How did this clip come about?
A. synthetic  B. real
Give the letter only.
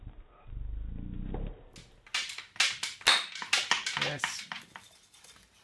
B